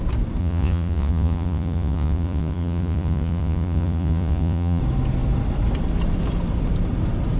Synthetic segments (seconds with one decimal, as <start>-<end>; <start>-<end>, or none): 0.4-4.8